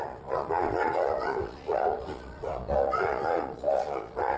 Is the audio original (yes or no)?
no